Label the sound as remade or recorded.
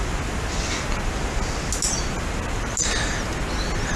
recorded